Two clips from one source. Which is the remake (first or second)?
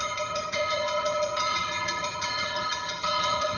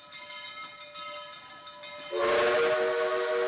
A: first